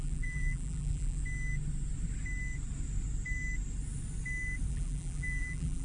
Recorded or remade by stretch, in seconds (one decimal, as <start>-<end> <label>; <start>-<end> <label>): 0.0-1.2 remade; 1.2-4.7 recorded; 4.7-5.8 remade